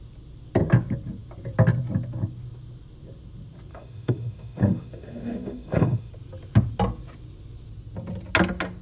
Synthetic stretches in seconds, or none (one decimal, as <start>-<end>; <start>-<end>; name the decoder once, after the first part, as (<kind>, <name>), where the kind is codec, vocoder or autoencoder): 3.7-6.1 (autoencoder, DAC-VAE)